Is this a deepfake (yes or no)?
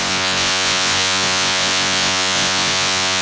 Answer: yes